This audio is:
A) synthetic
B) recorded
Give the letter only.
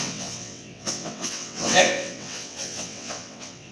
A